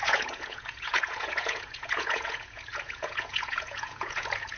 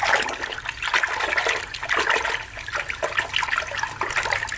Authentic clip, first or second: second